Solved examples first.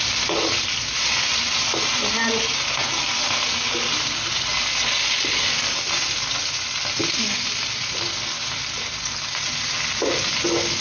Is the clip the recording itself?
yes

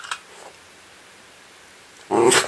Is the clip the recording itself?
yes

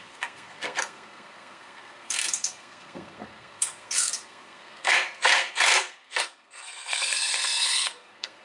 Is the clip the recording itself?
no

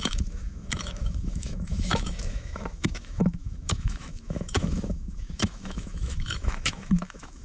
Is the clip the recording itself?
no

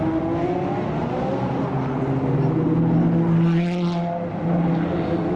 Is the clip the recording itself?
yes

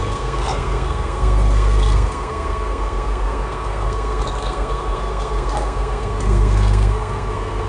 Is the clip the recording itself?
no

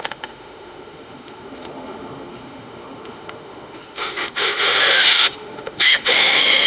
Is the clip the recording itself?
no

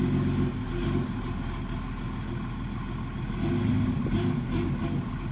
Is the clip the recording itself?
yes